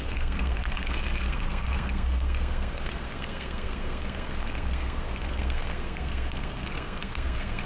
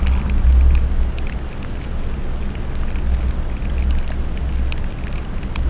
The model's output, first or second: first